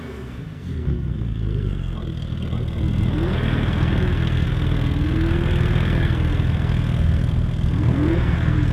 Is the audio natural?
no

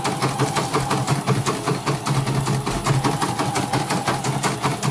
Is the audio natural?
yes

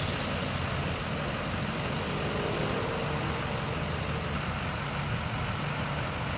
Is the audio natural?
yes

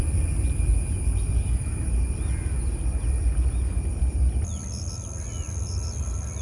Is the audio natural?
yes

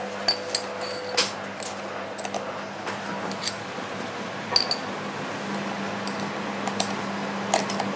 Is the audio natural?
yes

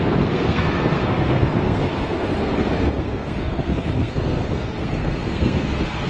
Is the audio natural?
no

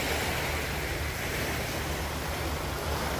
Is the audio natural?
yes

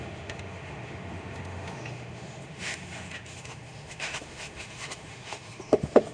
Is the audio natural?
no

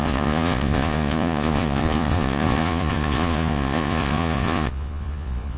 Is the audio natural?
no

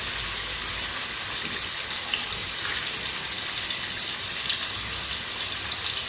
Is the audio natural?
yes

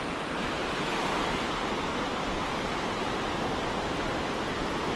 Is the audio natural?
yes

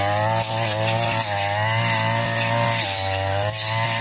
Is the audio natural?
yes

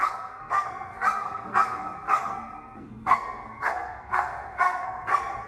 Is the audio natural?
no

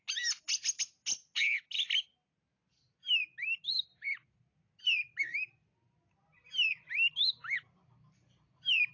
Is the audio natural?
yes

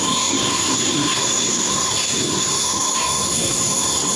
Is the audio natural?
no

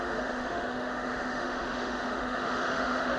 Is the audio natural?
no